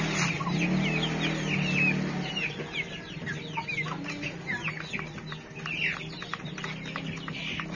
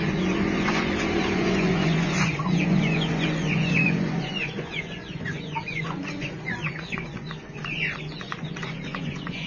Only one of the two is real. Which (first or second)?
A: first